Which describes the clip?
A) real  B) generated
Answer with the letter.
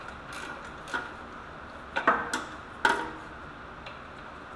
A